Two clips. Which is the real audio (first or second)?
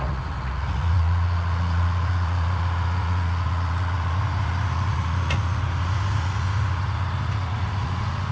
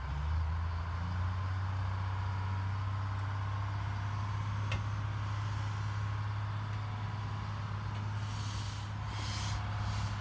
second